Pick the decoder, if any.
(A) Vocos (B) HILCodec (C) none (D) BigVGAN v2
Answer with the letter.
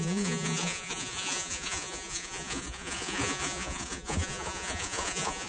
A